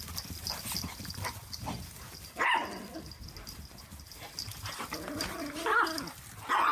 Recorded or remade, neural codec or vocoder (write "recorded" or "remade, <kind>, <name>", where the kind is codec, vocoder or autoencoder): recorded